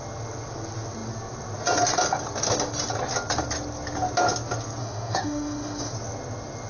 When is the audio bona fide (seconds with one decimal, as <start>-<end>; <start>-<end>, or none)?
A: 0.0-4.8; 5.9-6.7